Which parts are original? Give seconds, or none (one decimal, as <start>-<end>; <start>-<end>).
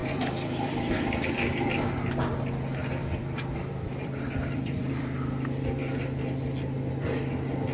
0.7-3.0; 5.2-7.7